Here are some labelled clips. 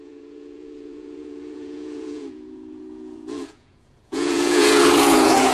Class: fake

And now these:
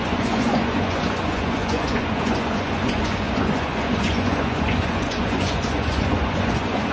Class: fake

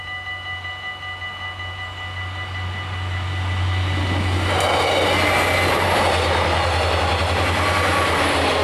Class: real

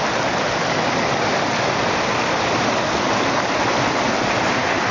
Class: real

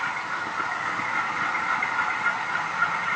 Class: real